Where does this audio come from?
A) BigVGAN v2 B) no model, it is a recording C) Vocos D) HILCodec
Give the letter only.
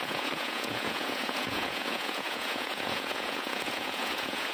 C